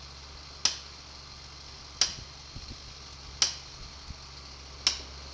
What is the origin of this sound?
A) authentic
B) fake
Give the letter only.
A